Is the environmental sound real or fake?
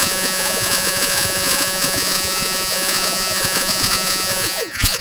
fake